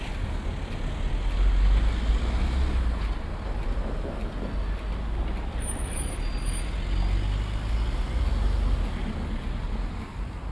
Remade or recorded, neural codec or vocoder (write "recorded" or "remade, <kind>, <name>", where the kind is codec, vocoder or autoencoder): recorded